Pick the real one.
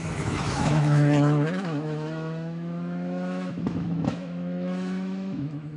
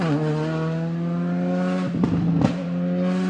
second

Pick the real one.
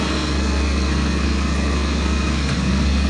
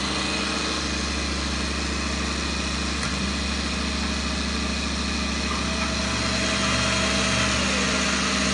second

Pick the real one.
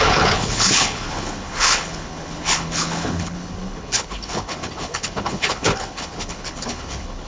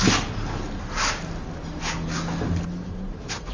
second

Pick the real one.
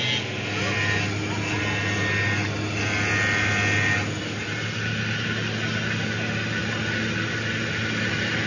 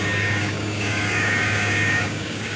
first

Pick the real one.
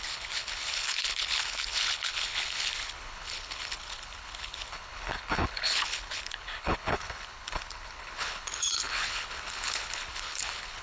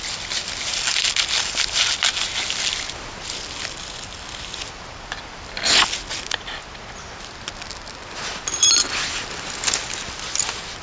second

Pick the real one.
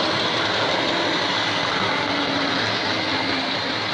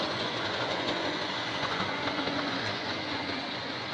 first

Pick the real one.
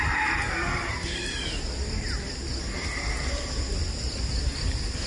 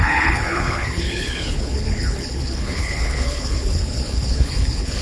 first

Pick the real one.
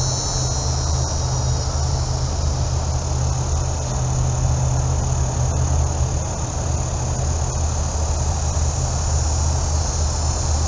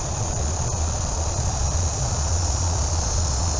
first